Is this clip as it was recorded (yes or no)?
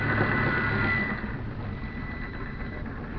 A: yes